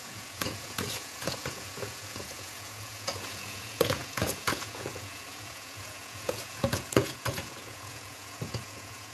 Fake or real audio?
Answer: fake